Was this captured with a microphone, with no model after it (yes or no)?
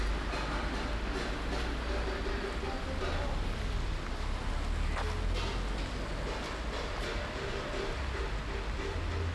yes